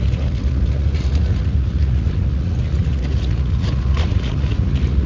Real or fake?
fake